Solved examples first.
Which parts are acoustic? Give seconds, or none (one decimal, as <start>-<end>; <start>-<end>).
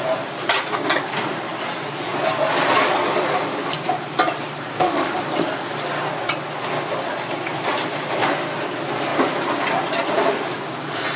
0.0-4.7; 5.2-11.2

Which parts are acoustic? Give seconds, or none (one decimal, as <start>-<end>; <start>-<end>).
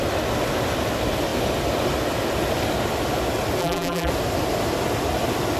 0.0-3.6; 4.1-5.6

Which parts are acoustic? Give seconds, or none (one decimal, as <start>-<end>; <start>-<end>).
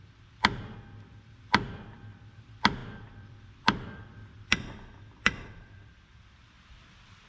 none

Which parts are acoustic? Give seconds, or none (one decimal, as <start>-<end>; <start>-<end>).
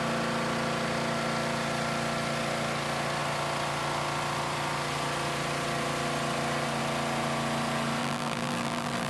0.0-8.0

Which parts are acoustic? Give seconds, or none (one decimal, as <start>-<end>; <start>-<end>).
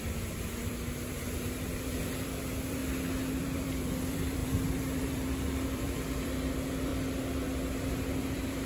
2.8-3.4; 6.9-7.9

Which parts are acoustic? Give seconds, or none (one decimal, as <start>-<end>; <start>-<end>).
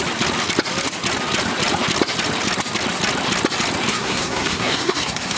0.0-3.9